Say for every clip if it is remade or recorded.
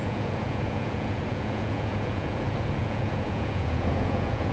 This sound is remade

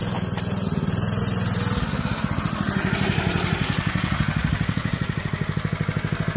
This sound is recorded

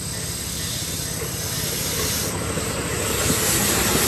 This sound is recorded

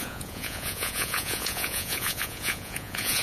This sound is remade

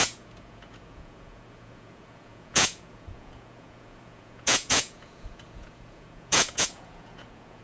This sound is remade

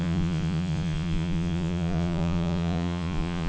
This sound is remade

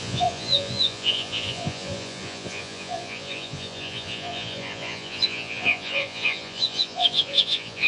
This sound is remade